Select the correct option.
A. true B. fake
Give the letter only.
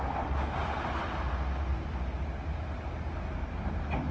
A